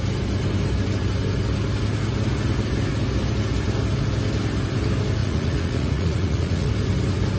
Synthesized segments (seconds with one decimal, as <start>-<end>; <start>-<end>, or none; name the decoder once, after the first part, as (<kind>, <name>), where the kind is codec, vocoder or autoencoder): 5.2-6.7 (vocoder, Vocos)

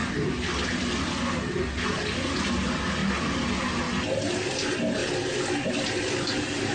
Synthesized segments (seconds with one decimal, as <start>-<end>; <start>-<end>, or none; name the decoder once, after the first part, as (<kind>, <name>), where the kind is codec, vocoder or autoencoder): none

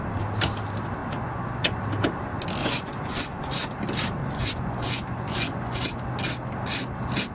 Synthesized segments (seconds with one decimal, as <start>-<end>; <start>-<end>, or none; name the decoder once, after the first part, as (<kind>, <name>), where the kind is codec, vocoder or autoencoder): 1.0-1.8 (vocoder, Vocos); 2.6-3.7; 4.2-5.8

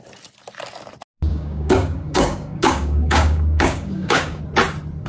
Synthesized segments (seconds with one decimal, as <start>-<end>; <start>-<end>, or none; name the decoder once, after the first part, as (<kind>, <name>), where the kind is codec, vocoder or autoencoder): 1.3-4.4 (codec, DAC)

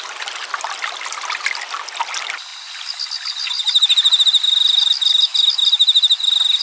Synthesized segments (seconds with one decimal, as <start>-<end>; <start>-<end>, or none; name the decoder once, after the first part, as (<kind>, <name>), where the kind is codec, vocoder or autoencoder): none